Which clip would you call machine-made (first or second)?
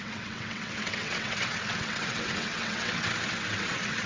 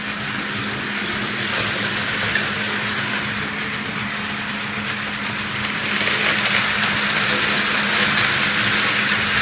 first